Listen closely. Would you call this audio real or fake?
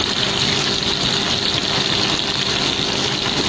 real